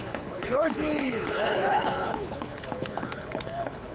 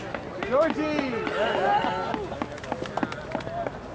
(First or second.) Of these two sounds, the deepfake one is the first